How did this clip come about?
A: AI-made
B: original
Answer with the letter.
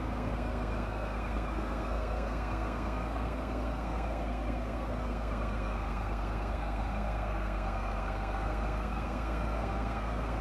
A